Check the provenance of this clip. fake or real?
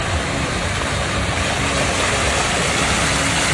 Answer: real